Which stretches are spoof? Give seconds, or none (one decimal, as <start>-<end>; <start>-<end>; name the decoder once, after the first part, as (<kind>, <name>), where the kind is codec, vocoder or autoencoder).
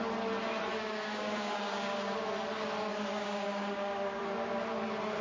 0.7-2.3 (codec, DAC); 2.9-4.2